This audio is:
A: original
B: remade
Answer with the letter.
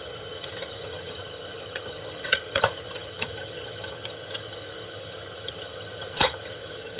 B